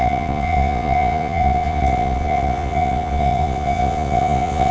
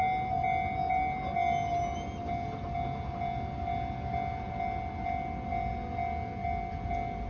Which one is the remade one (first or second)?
first